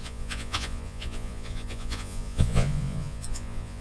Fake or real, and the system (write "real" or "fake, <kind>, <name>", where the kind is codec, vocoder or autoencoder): fake, vocoder, Vocos